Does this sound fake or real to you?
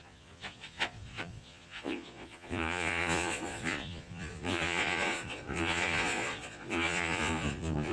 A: fake